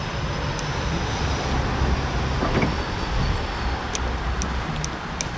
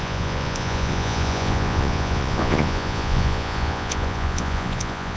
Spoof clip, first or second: second